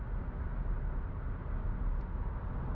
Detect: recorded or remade recorded